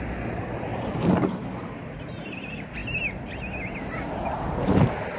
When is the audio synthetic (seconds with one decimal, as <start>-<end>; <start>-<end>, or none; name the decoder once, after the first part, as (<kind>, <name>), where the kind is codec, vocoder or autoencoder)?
none